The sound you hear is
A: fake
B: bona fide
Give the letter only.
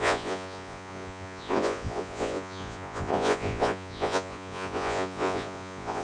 A